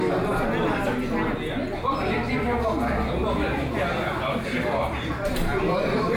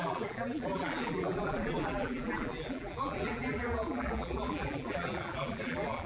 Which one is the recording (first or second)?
first